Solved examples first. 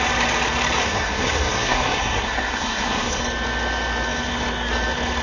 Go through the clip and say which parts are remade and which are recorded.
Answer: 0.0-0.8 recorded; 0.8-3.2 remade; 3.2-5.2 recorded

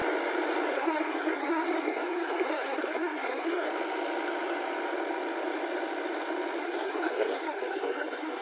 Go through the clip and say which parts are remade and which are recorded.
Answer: 0.0-0.7 recorded; 0.7-3.7 remade; 3.7-6.6 recorded; 6.6-8.4 remade

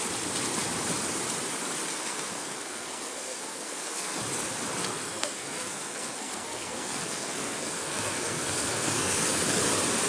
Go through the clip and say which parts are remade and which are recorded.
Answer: 0.0-1.9 recorded; 1.9-4.2 remade; 4.2-4.8 recorded; 4.8-9.6 remade; 9.6-10.1 recorded

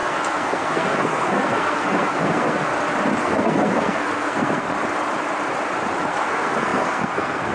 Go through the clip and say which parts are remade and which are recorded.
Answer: 0.0-2.7 remade; 2.7-3.2 recorded; 3.2-4.7 remade; 4.7-6.0 recorded; 6.0-7.5 remade

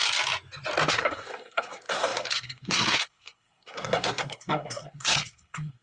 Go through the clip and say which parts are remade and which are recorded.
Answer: 0.0-0.9 recorded; 0.9-5.8 remade

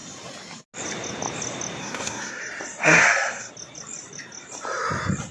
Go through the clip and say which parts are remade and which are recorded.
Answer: 0.0-1.8 recorded; 1.8-2.4 remade; 2.4-2.8 recorded; 2.8-3.5 remade; 3.5-5.3 recorded

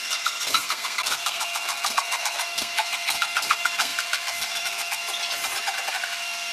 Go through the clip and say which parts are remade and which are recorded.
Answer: 0.0-5.0 remade; 5.0-5.9 recorded; 5.9-6.5 remade

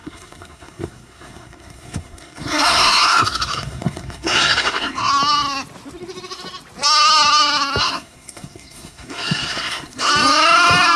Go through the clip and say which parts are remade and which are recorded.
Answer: 0.0-5.1 remade; 5.1-7.8 recorded; 7.8-10.1 remade; 10.1-11.0 recorded